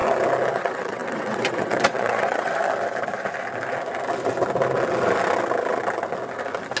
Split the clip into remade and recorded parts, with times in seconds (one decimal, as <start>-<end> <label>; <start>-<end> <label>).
0.0-0.5 recorded; 0.5-2.6 remade; 2.6-6.8 recorded